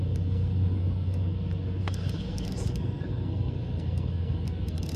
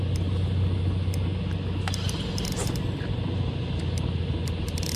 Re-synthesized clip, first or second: first